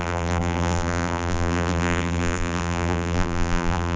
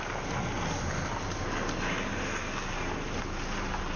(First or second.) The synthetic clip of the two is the first